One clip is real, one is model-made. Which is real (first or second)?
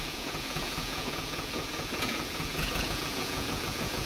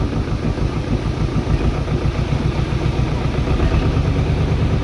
second